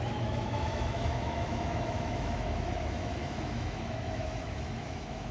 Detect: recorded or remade remade